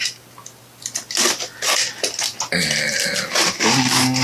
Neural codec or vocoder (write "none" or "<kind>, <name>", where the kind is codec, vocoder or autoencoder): none